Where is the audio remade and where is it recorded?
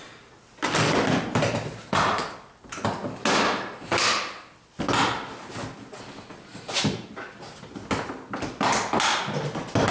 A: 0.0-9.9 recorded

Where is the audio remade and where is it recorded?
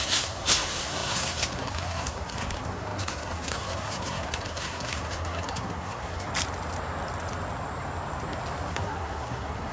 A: 0.0-6.3 remade; 6.3-8.7 recorded; 8.7-9.7 remade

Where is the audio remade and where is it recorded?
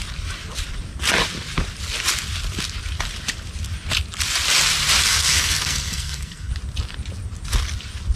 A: 0.0-5.0 recorded; 5.0-6.5 remade; 6.5-8.2 recorded